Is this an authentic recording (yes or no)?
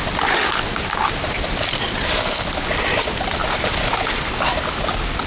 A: yes